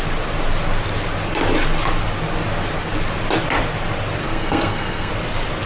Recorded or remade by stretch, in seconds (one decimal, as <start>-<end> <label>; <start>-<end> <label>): 0.0-4.2 recorded; 4.2-5.1 remade; 5.1-5.7 recorded